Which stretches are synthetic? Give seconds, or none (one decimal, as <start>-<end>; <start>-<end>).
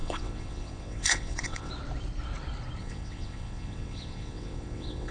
0.0-1.7; 2.8-5.1